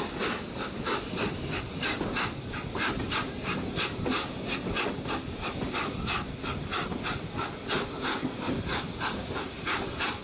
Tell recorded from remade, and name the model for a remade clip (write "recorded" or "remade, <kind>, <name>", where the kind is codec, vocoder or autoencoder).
recorded